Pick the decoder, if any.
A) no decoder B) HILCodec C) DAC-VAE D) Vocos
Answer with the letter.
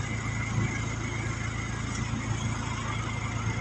A